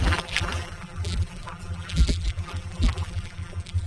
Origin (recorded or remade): remade